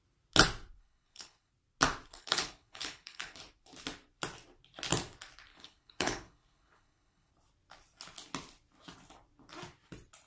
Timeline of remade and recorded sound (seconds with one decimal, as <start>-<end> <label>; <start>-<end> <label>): 0.0-0.8 recorded; 0.8-1.5 remade; 1.5-2.1 recorded; 2.1-3.4 remade; 3.4-5.5 recorded; 5.5-7.3 remade; 7.3-10.3 recorded